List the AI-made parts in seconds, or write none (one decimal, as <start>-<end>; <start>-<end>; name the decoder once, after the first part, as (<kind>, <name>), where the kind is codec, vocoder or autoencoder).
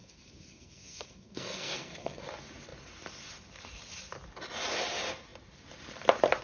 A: 0.0-2.2 (codec, SNAC)